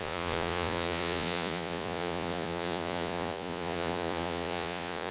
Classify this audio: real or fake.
fake